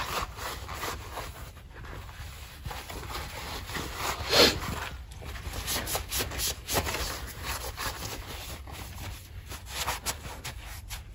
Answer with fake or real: real